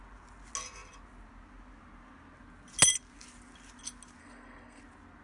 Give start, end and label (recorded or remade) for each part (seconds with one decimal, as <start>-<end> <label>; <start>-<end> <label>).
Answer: 0.0-4.2 recorded; 4.2-4.8 remade; 4.8-5.2 recorded